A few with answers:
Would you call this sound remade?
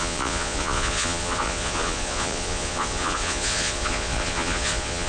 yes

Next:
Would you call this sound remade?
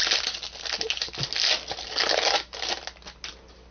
no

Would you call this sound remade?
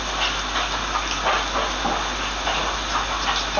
no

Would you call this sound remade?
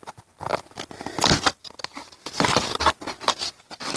no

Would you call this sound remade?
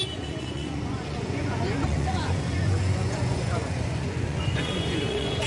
yes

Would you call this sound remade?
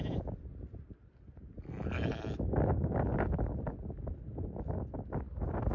no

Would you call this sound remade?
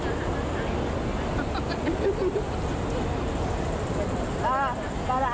no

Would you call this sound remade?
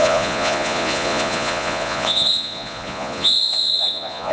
yes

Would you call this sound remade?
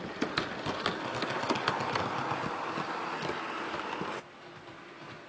no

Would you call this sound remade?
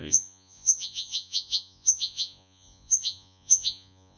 yes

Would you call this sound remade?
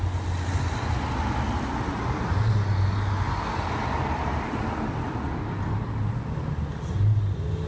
no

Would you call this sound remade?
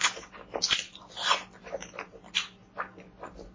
no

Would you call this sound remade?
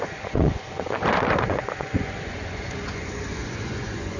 yes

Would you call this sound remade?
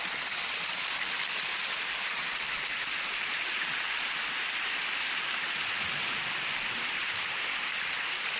no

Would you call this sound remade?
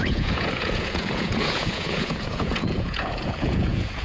yes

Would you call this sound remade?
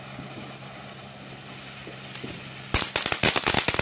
no